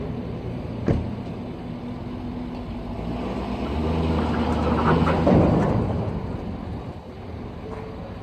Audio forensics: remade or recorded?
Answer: recorded